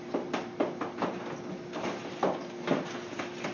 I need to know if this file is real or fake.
real